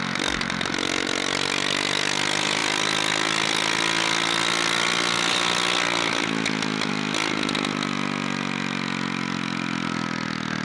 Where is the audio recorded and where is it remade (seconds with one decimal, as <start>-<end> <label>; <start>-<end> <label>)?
0.0-10.6 recorded